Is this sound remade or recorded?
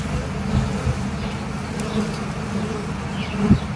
recorded